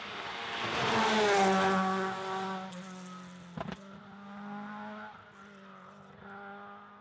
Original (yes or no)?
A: yes